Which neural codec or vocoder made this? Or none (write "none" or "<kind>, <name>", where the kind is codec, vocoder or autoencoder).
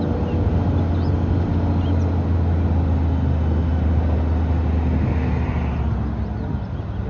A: none